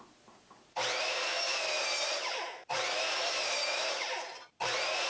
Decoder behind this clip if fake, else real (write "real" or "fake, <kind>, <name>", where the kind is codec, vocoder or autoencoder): fake, vocoder, BigVGAN v2